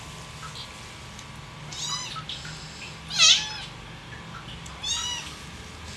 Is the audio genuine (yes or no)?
yes